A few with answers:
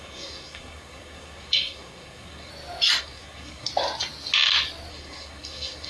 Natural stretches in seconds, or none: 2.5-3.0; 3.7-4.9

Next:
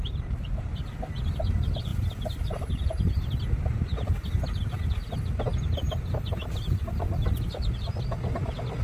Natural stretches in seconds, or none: 0.0-1.9; 2.5-8.8

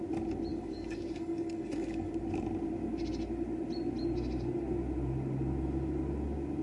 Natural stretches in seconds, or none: 0.0-0.5; 2.1-6.6

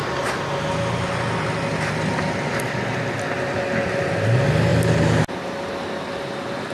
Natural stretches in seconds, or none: 0.0-6.7

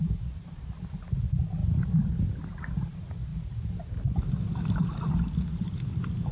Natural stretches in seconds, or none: 0.0-6.3